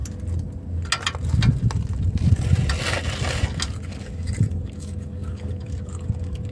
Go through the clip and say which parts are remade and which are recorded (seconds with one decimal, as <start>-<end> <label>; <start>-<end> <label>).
0.0-3.9 recorded; 3.9-6.5 remade